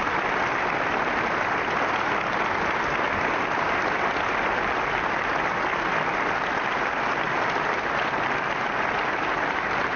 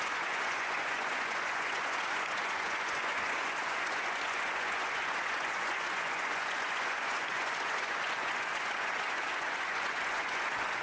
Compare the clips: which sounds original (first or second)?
first